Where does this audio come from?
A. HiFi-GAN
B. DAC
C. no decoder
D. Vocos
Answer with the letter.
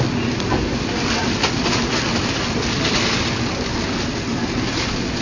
C